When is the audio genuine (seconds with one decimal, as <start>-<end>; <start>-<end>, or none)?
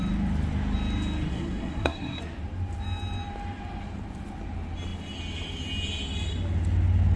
0.0-1.3; 2.2-7.2